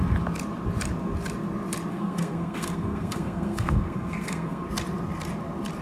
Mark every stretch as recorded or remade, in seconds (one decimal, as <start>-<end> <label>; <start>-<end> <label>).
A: 0.0-1.9 recorded; 1.9-4.6 remade; 4.6-5.8 recorded